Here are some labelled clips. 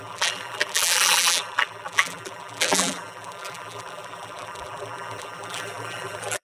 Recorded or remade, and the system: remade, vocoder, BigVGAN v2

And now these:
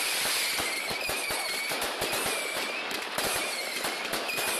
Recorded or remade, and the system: recorded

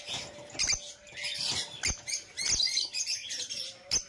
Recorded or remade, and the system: recorded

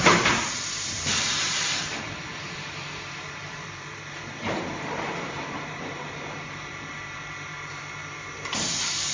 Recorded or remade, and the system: remade, vocoder, BigVGAN v2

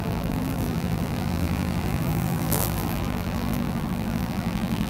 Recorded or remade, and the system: remade, vocoder, BigVGAN v2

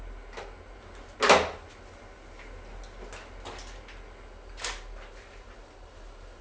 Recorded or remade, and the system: recorded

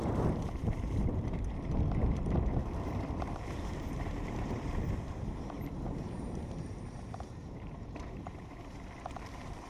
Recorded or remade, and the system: remade, vocoder, BigVGAN v2